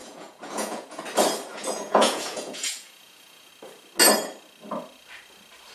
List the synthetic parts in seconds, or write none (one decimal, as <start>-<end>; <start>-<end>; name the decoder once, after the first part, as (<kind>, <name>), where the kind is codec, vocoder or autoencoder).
0.0-1.0 (vocoder, Vocos); 1.5-3.5